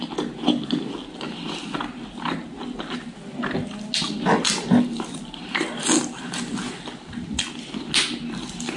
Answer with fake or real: real